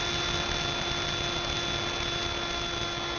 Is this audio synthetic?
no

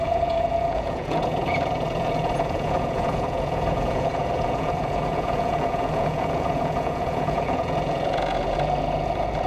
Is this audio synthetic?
yes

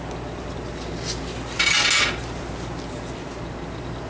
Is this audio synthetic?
no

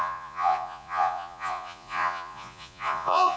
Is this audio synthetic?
yes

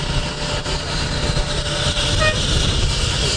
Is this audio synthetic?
no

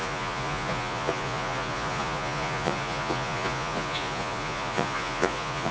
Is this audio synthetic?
yes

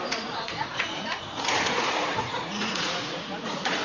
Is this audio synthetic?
yes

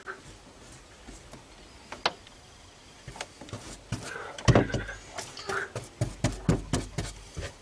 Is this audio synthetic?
no